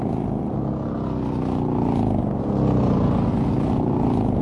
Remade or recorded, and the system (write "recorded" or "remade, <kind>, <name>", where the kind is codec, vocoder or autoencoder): recorded